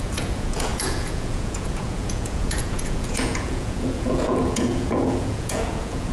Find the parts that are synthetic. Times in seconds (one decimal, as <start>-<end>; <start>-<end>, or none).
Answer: 0.0-6.1